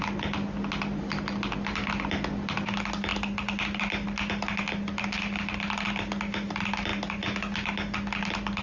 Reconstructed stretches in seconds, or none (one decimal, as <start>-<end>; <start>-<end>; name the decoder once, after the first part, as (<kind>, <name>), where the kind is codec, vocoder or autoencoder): none